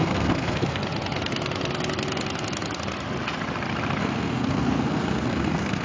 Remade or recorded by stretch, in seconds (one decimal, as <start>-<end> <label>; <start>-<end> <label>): 0.0-0.8 remade; 0.8-4.0 recorded; 4.0-5.8 remade